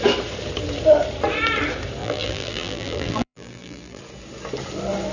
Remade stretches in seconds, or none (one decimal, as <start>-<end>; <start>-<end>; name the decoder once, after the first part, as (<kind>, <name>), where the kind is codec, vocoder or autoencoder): 2.0-4.0 (vocoder, BigVGAN v2)